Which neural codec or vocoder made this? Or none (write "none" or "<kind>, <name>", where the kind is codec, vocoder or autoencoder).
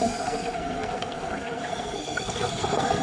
codec, SNAC